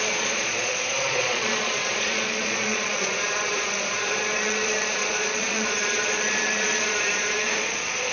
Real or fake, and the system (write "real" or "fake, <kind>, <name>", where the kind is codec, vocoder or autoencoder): fake, vocoder, Vocos